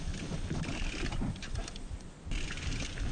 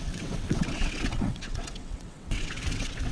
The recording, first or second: first